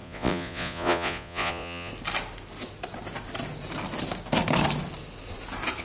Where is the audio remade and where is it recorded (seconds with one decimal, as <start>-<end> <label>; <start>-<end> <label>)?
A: 0.0-1.9 remade; 1.9-5.8 recorded